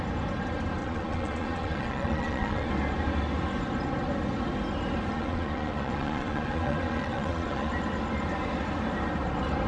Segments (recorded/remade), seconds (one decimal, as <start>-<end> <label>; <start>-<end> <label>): 0.0-0.8 recorded; 0.8-2.7 remade; 2.7-5.1 recorded; 5.1-7.7 remade; 7.7-9.7 recorded